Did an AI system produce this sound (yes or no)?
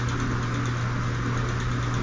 no